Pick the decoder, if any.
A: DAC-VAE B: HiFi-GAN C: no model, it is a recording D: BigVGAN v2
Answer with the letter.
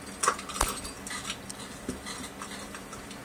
C